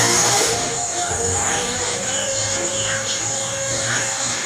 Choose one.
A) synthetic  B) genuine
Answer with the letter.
A